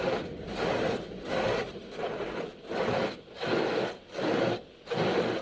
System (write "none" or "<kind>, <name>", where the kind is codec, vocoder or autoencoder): none